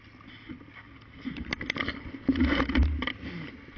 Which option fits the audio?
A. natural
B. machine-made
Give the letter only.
A